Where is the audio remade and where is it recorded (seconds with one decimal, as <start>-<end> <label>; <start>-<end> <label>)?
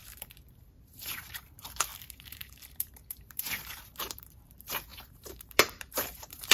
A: 0.0-6.5 remade